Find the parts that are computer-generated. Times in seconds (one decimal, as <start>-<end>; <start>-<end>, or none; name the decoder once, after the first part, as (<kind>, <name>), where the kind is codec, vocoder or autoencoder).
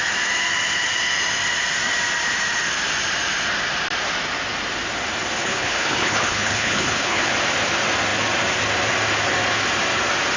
5.4-7.3 (codec, HILCodec)